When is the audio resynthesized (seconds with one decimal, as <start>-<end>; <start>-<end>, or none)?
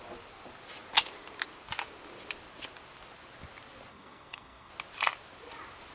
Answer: 3.9-4.7